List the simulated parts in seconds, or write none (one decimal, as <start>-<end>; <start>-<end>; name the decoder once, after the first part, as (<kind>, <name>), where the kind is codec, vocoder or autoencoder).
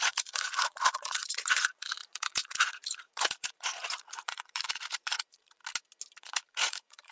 0.0-5.6 (vocoder, Vocos); 6.2-7.1